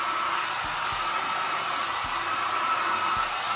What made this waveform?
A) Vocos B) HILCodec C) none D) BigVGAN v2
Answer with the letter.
C